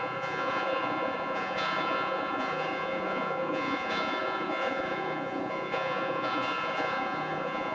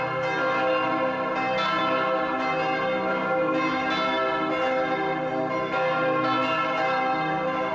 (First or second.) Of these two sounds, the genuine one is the second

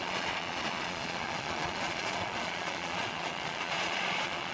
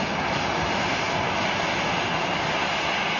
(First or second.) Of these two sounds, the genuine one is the second